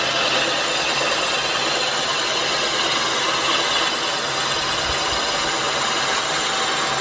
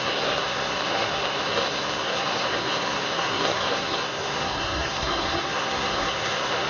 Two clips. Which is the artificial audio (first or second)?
second